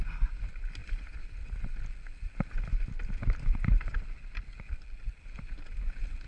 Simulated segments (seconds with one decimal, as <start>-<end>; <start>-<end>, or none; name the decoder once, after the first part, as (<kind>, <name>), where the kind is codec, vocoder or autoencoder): none